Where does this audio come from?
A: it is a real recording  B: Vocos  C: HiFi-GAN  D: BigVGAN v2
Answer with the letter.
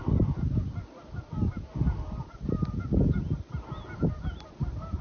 A